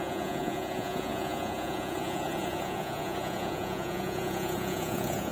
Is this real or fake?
fake